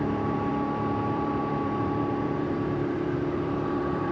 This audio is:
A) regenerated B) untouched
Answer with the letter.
A